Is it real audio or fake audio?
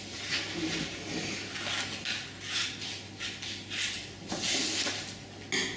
real